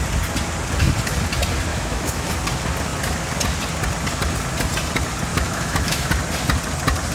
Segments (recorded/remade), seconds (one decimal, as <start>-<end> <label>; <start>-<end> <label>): 0.0-1.7 recorded; 1.7-2.3 remade; 2.3-5.3 recorded; 5.3-6.1 remade; 6.1-7.1 recorded